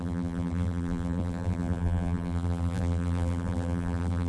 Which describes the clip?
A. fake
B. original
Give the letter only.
A